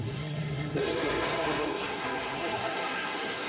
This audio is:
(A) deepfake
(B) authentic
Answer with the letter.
A